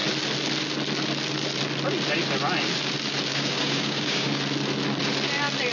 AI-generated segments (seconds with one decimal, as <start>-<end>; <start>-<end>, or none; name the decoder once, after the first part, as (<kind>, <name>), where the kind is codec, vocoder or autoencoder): 3.3-4.4 (codec, DAC)